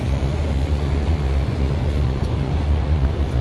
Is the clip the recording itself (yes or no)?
no